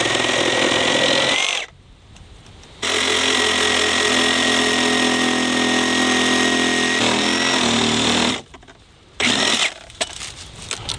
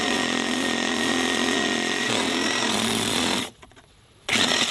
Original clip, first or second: first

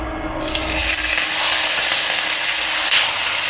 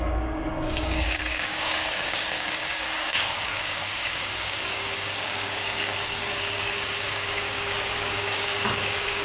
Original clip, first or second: first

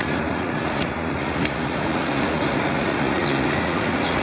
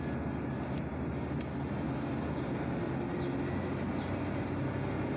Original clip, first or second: second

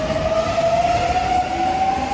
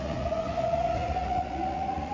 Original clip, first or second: first